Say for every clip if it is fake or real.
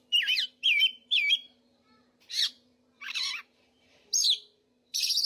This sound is fake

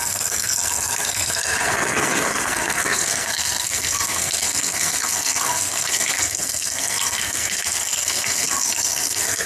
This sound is fake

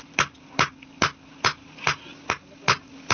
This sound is real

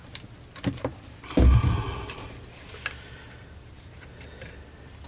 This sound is real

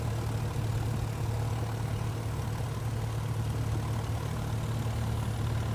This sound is real